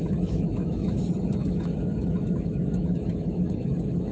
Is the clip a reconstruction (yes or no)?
yes